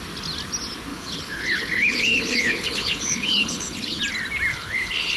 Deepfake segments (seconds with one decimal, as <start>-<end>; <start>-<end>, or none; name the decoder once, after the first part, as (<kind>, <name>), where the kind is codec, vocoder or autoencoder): 0.9-4.0 (codec, HILCodec); 4.5-5.2